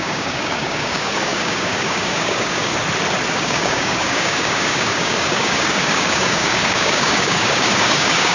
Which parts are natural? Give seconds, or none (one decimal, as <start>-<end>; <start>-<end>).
2.7-3.3